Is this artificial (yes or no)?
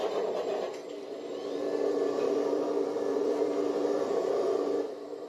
yes